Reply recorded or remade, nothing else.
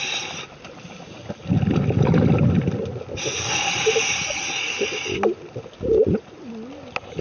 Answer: recorded